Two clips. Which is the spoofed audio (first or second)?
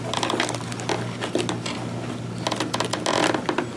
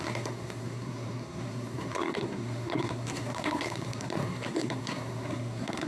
second